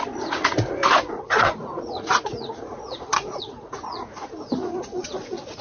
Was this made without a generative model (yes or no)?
no